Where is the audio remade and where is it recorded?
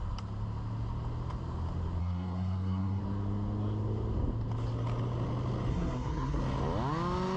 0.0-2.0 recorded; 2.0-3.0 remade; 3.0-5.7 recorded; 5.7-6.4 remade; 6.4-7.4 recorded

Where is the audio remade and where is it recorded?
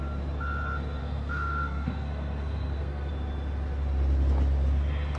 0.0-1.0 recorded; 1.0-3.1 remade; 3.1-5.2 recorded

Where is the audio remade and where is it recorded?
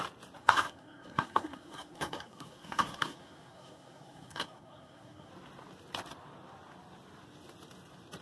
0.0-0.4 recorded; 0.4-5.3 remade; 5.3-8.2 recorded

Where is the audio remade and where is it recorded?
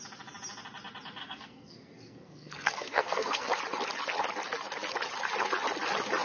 0.0-1.2 recorded; 1.2-3.5 remade; 3.5-6.2 recorded